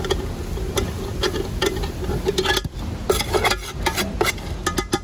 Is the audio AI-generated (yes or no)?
no